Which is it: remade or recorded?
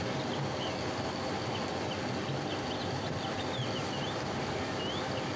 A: recorded